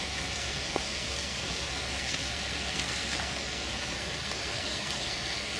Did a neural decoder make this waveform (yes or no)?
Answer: yes